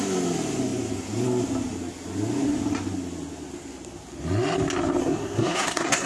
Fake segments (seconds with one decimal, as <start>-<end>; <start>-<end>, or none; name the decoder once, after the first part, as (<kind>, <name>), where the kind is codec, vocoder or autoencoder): 5.0-6.1 (codec, SNAC)